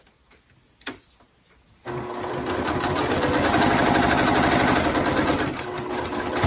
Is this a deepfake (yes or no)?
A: no